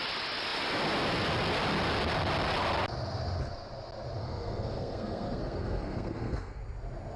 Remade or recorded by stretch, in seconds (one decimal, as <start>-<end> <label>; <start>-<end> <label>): 0.0-4.2 recorded; 4.2-6.6 remade; 6.6-7.2 recorded